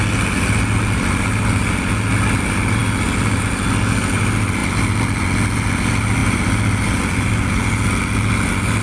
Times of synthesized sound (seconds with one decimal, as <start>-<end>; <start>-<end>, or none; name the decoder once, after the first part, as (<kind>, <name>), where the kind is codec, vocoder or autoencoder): 6.2-7.6 (vocoder, BigVGAN v2)